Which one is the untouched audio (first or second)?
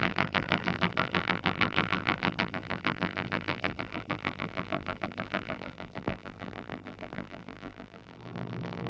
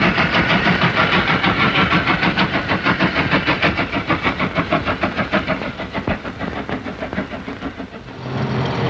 second